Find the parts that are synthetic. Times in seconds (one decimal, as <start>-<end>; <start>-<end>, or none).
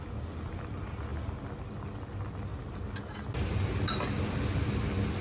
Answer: none